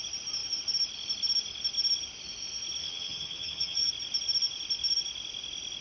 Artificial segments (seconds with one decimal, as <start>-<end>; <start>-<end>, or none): 2.8-3.9